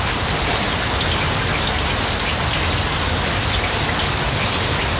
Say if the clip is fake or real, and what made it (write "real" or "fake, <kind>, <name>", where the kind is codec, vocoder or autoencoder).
real